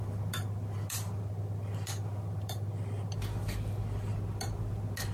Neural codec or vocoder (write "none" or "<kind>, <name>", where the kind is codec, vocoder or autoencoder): none